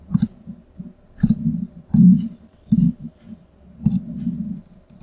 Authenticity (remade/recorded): recorded